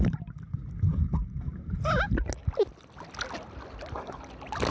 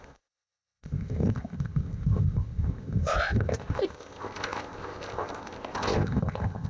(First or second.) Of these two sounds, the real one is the first